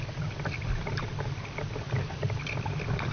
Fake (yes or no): no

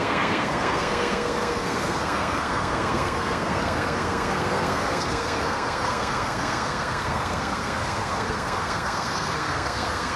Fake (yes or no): yes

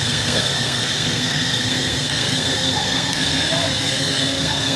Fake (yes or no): yes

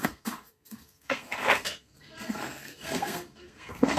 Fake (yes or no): yes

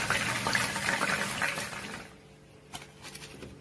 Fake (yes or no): no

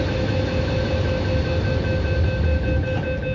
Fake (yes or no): no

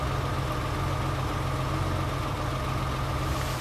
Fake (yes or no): no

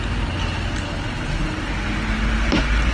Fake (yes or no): no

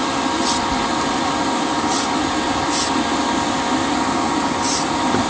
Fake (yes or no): no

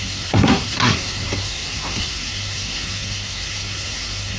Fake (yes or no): yes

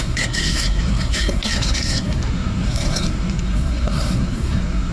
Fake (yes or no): yes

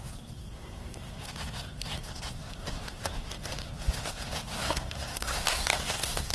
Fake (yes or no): yes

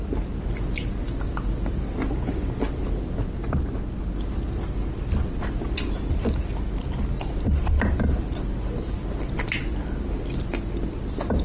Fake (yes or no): no